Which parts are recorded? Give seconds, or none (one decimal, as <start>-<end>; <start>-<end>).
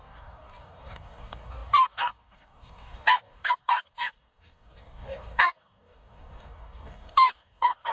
none